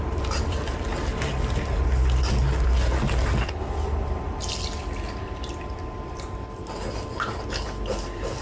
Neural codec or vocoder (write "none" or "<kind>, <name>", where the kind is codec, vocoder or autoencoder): none